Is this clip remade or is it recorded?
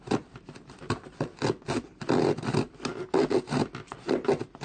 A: recorded